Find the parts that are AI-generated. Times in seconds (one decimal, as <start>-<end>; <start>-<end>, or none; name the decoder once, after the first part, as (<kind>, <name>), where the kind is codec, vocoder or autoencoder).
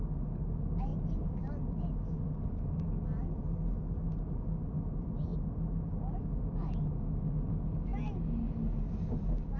none